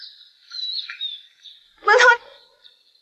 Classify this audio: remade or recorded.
recorded